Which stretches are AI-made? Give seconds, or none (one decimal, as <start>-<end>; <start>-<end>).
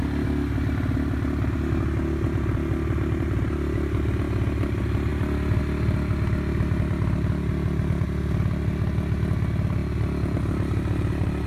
none